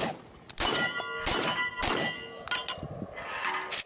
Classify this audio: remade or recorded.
recorded